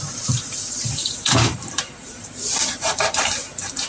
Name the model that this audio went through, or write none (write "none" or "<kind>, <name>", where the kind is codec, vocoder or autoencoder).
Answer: vocoder, BigVGAN v2